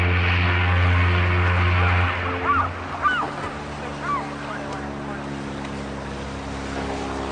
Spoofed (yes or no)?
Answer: no